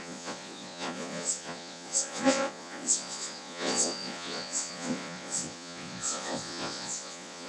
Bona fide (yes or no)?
no